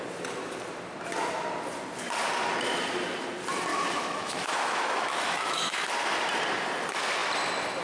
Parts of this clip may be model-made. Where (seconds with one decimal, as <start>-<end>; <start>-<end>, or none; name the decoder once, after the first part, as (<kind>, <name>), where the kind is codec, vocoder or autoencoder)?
3.7-5.9 (autoencoder, DAC-VAE)